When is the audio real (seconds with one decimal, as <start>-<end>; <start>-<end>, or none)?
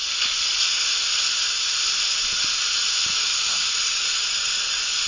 0.0-5.1